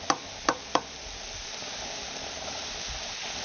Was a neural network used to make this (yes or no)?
no